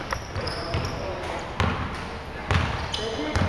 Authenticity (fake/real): real